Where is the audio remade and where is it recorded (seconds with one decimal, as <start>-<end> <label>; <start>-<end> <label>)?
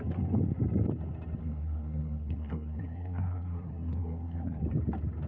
0.0-1.4 recorded; 1.4-4.6 remade; 4.6-5.3 recorded